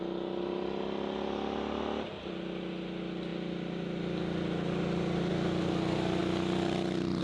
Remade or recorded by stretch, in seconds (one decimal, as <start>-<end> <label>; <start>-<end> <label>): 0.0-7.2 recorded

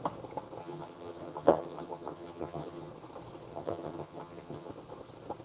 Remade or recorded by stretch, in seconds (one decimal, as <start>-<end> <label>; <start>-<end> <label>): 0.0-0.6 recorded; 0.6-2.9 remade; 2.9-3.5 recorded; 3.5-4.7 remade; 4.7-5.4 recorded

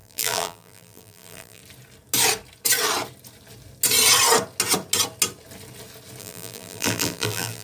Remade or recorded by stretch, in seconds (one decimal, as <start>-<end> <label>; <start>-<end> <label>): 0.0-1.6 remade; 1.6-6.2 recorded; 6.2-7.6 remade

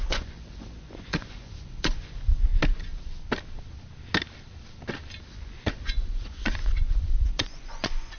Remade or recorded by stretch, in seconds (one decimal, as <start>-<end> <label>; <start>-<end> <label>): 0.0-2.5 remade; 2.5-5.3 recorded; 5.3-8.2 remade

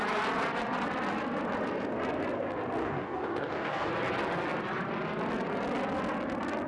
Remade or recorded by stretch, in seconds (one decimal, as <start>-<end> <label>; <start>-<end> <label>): 0.0-2.8 recorded; 2.8-3.9 remade; 3.9-6.7 recorded

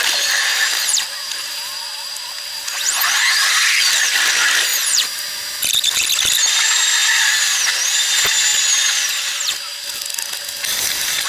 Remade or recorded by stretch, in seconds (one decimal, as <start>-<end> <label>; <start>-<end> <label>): 0.0-0.5 recorded; 0.5-1.8 remade; 1.8-4.7 recorded; 4.7-5.2 remade; 5.2-7.0 recorded; 7.0-7.6 remade; 7.6-11.3 recorded

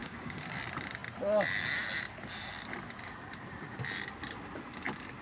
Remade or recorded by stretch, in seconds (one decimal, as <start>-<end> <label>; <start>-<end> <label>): 0.0-0.5 remade; 0.5-5.2 recorded

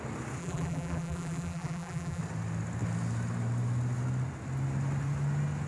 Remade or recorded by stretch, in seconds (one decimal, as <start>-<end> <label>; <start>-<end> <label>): 0.0-0.4 recorded; 0.4-2.2 remade; 2.2-5.7 recorded